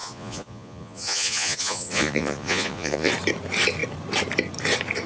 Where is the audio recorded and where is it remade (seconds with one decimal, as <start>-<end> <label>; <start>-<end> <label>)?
0.0-3.1 remade; 3.1-5.1 recorded